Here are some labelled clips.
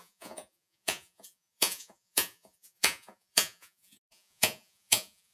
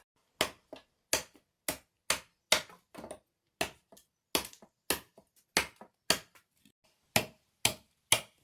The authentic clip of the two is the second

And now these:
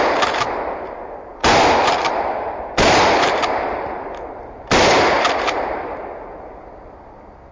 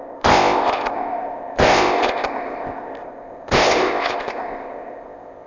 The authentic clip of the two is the first